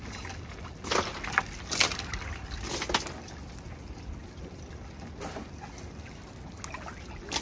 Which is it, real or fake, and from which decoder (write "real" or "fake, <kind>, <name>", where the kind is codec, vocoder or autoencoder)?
real